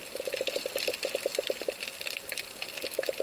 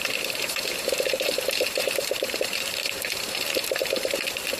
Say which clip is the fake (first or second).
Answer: second